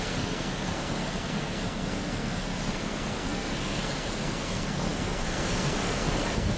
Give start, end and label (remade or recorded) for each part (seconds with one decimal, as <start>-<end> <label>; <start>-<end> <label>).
0.0-6.6 remade